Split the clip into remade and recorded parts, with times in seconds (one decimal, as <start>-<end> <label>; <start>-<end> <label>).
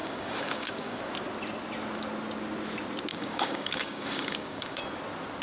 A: 0.0-1.0 remade; 1.0-3.1 recorded; 3.1-4.8 remade; 4.8-5.4 recorded